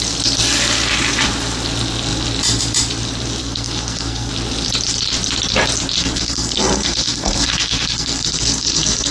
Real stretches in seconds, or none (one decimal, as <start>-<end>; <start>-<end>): 0.0-3.4; 4.3-6.0